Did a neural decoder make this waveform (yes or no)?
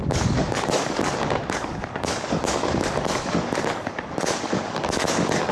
yes